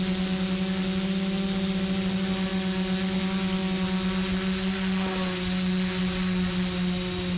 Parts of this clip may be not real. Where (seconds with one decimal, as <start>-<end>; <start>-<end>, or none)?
none